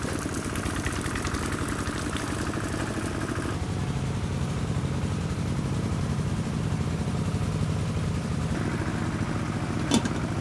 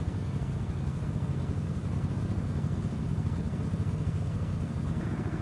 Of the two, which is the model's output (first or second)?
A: second